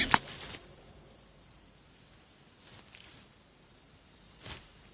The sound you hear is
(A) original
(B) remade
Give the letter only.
B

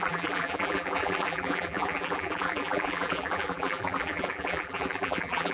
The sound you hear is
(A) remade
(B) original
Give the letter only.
A